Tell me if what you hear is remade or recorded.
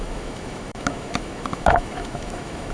remade